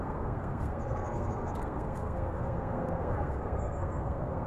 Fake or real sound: fake